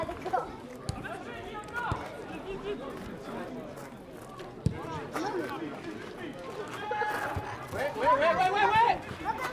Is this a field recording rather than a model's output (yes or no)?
yes